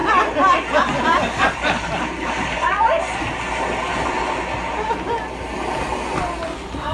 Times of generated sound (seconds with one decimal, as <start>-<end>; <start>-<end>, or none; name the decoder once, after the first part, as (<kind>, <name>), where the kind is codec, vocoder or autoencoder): none